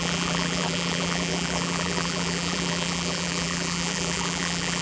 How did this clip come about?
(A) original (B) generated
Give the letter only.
B